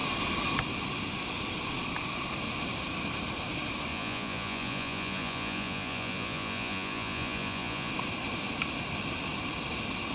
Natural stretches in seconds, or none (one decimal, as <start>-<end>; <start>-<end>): 0.0-3.9; 7.9-10.1